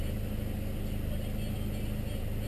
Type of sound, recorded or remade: recorded